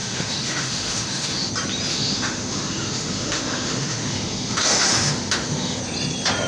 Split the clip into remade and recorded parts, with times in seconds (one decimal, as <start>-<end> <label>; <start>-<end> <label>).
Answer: 0.0-1.5 remade; 1.5-1.9 recorded; 1.9-5.8 remade; 5.8-6.5 recorded